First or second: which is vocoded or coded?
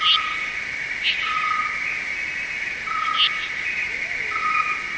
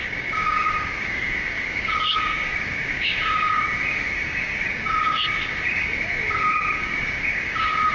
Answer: second